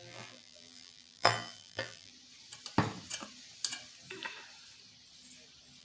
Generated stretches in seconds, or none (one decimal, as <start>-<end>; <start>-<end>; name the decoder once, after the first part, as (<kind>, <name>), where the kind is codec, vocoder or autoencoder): 0.0-2.1 (vocoder, BigVGAN v2)